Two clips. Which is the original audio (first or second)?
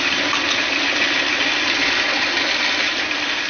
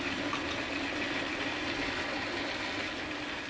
second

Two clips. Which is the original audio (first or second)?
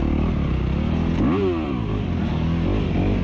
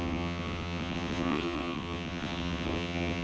first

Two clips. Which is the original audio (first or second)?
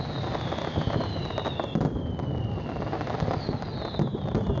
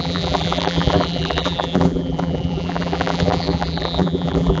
first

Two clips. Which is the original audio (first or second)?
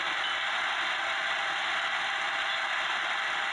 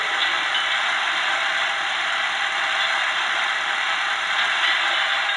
first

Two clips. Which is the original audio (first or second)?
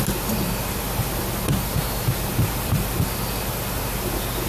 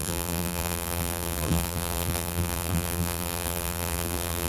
first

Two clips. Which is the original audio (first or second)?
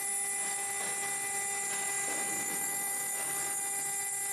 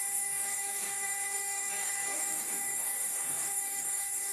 first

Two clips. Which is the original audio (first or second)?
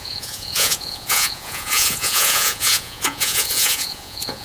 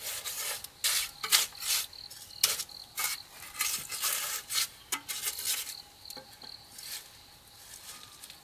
second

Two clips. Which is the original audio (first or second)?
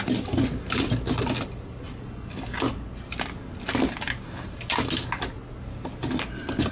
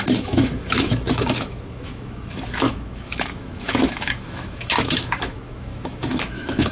first